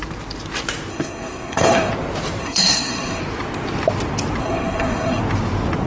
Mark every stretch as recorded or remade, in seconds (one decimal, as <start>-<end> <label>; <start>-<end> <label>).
0.0-0.9 recorded; 0.9-1.9 remade; 1.9-2.4 recorded; 2.4-3.2 remade; 3.2-4.4 recorded; 4.4-5.2 remade; 5.2-5.9 recorded